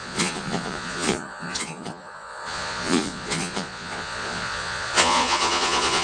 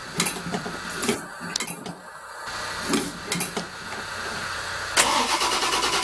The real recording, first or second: second